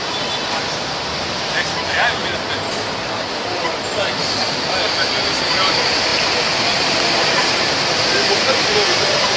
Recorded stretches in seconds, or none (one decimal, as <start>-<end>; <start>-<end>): 0.0-9.4